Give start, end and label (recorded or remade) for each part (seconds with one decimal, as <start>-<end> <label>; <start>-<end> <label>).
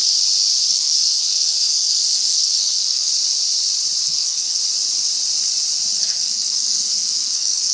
0.0-0.7 recorded; 0.7-3.1 remade; 3.1-4.0 recorded; 4.0-4.6 remade; 4.6-6.0 recorded; 6.0-7.7 remade